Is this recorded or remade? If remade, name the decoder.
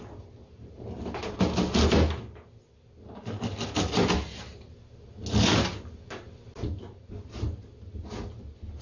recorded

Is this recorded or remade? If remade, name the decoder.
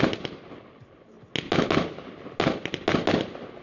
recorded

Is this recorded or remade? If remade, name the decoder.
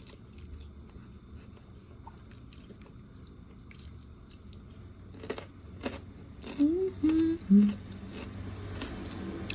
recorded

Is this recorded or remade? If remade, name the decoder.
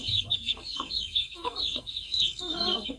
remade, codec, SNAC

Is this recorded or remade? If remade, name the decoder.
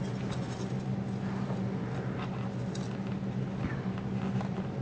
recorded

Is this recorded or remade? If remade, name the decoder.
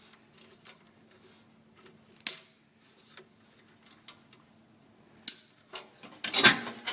recorded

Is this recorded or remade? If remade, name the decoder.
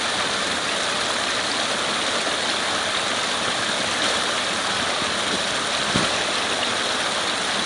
recorded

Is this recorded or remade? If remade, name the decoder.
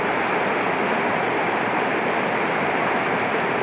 recorded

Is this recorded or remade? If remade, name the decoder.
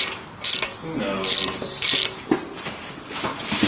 recorded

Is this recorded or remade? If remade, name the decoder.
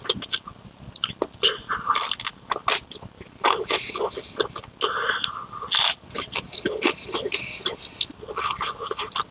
recorded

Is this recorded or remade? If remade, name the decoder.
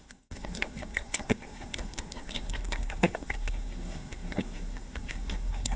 remade, codec, SNAC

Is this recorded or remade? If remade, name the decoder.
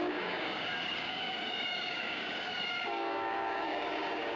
remade, codec, DAC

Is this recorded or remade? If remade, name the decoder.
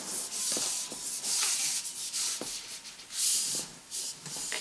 recorded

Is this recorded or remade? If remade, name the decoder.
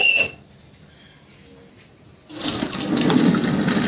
recorded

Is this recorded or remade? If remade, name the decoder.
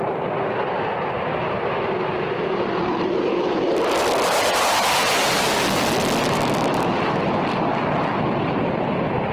recorded